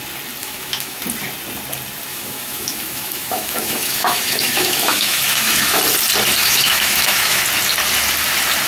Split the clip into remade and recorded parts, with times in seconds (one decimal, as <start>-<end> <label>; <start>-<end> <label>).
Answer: 0.0-0.4 recorded; 0.4-1.0 remade; 1.0-2.1 recorded; 2.1-5.8 remade; 5.8-6.4 recorded; 6.4-7.4 remade; 7.4-8.7 recorded